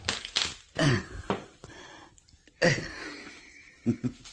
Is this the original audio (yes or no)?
yes